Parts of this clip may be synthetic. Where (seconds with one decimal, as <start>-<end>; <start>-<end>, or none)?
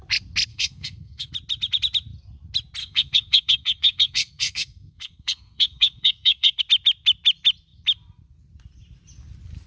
0.5-1.3; 2.8-6.6